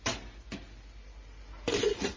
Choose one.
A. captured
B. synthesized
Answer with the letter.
A